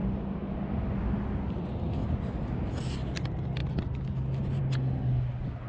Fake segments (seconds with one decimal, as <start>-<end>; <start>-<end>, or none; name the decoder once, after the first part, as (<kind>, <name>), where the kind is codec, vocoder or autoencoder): none